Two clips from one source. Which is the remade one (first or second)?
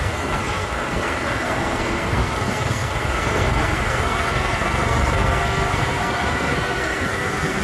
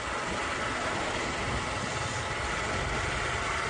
first